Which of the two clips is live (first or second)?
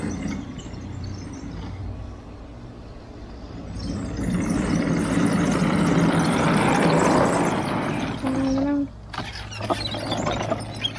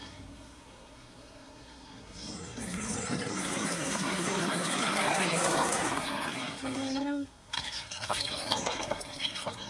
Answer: first